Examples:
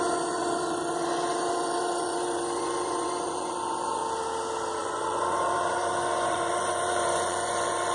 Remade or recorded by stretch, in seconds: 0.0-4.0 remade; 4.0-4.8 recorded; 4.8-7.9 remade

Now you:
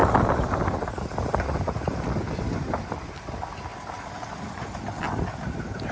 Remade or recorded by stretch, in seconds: 0.0-3.2 remade; 3.2-3.7 recorded; 3.7-5.4 remade; 5.4-5.9 recorded

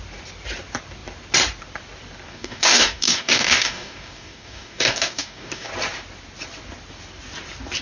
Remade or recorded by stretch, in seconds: 0.0-2.3 recorded; 2.3-5.7 remade; 5.7-7.8 recorded

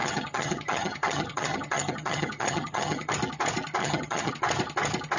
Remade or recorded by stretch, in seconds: 0.0-3.1 remade; 3.1-3.8 recorded; 3.8-4.3 remade; 4.3-5.2 recorded

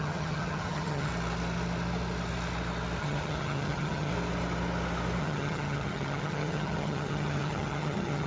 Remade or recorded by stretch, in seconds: 0.0-1.1 remade; 1.1-3.0 recorded; 3.0-4.1 remade; 4.1-5.2 recorded; 5.2-8.3 remade

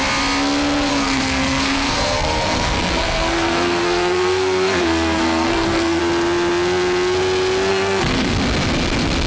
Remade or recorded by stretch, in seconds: 0.0-0.9 recorded; 0.9-6.0 remade; 6.0-7.7 recorded; 7.7-8.4 remade; 8.4-9.3 recorded

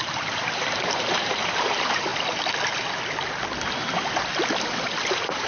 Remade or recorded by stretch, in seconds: 0.0-2.1 remade; 2.1-5.1 recorded; 5.1-5.5 remade

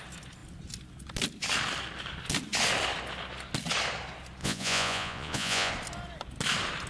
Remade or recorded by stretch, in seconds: 0.0-4.4 recorded; 4.4-5.7 remade; 5.7-6.9 recorded